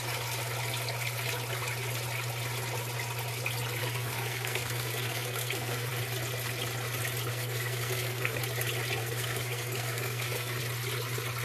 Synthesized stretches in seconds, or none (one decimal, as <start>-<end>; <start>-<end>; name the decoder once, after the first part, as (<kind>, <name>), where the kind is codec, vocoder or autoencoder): 3.8-5.9 (codec, SNAC); 7.3-8.4; 9.0-10.6